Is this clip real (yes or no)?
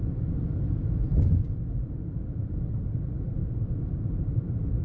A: yes